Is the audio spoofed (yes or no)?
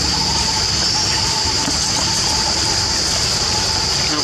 no